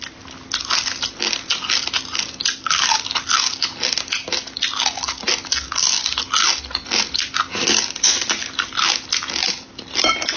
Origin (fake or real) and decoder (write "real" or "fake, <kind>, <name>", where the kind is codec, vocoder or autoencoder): real